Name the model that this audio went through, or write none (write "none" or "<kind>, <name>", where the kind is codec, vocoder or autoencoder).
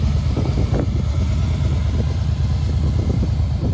none